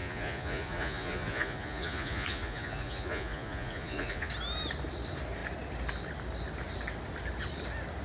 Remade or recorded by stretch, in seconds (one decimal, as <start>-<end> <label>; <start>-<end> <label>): 0.0-4.3 remade; 4.3-8.0 recorded